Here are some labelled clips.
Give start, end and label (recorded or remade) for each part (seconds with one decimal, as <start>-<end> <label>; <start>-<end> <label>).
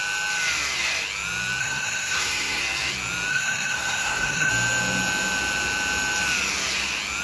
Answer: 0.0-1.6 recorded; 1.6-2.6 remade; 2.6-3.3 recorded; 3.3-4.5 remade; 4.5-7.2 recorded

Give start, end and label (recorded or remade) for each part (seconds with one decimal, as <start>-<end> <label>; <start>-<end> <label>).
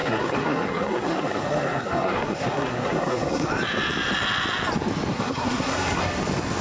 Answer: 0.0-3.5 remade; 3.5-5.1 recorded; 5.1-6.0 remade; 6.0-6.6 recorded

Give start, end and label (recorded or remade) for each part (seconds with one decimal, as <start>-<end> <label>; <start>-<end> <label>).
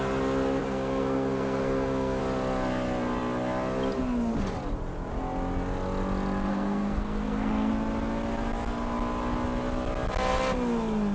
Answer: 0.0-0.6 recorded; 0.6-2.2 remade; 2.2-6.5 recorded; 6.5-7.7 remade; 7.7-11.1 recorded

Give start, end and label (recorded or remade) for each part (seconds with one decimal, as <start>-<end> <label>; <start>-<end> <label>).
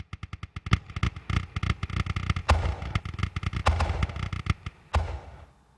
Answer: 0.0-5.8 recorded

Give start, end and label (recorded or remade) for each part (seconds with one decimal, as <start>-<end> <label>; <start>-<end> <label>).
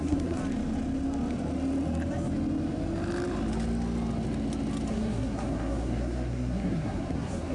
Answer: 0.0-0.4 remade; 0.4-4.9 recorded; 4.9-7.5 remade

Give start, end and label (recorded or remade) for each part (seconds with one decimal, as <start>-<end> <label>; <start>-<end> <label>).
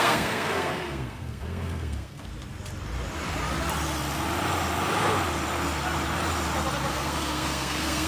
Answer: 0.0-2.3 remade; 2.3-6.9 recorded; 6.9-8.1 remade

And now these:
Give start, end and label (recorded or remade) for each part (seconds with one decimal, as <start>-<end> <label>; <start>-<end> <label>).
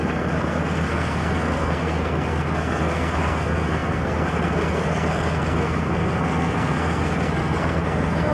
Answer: 0.0-8.3 remade